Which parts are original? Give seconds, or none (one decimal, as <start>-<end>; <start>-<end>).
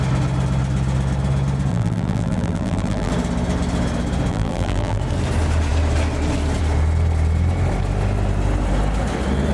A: 0.0-1.7; 3.1-4.3; 5.0-9.5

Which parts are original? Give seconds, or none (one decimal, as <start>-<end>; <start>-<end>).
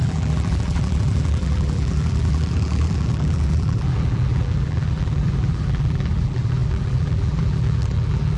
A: none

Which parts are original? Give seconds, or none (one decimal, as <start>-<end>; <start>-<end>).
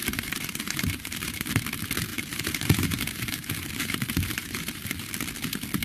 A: 1.5-2.1; 4.8-5.8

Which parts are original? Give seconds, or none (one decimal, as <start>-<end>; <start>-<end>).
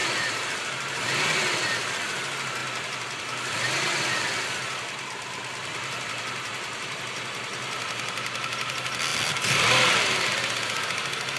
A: 1.4-2.6; 7.0-9.1; 10.0-11.4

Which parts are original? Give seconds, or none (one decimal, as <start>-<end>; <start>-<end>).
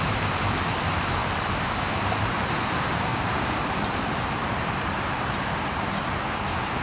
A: none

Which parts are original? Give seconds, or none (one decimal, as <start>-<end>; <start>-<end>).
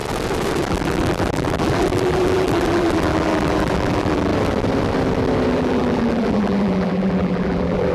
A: 0.0-0.7; 4.3-5.5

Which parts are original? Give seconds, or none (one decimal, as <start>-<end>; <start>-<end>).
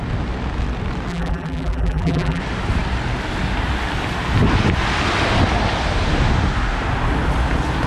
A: 0.0-1.1; 2.4-7.9